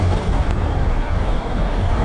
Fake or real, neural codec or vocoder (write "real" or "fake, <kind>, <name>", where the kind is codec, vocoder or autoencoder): fake, codec, DAC